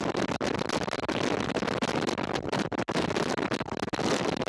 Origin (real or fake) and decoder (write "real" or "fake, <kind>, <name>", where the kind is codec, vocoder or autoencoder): real